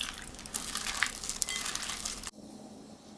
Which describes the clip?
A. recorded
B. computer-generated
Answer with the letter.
A